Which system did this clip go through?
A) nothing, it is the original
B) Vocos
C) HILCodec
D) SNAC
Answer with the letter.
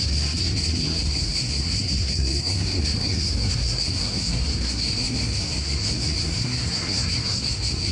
D